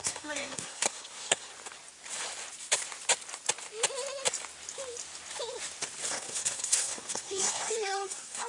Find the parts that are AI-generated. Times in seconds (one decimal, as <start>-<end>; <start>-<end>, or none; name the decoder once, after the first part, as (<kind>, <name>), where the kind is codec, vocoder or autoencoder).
0.0-1.5 (codec, SNAC); 6.1-8.5